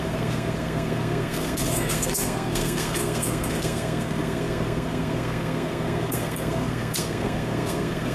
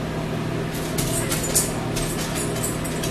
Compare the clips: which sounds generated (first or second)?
first